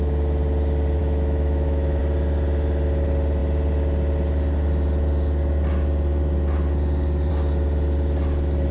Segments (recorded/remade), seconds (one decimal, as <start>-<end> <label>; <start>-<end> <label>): 0.0-1.0 recorded; 1.0-2.0 remade; 2.0-8.7 recorded